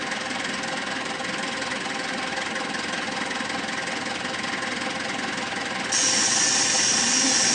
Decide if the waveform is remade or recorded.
recorded